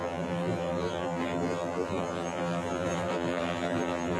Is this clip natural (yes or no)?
no